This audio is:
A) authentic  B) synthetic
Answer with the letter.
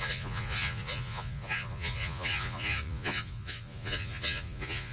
B